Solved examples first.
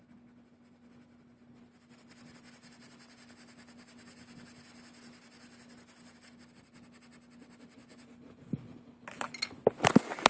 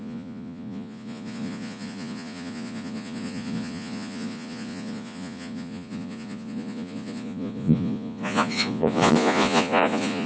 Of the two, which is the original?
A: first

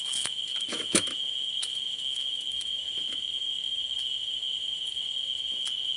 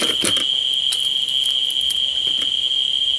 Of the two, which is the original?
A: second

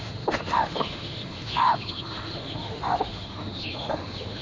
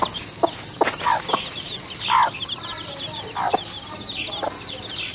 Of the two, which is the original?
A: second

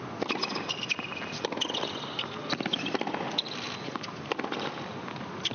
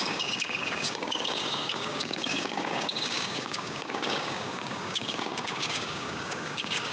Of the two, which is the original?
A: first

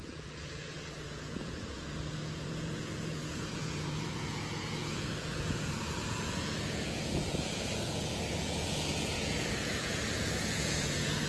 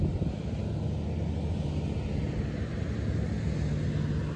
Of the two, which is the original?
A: second